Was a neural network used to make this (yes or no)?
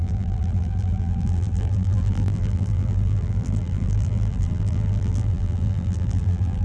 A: yes